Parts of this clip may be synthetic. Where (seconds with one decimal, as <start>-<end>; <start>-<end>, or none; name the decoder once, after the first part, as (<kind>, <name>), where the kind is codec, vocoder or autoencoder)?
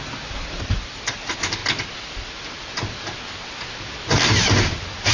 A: none